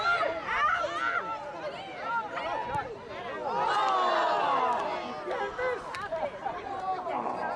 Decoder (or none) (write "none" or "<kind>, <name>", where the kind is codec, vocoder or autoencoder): none